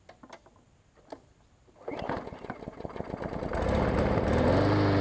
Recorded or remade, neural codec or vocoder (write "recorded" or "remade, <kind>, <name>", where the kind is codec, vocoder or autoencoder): recorded